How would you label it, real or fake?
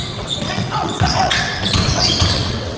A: fake